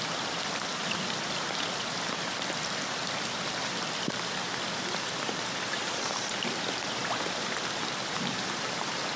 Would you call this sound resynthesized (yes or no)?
yes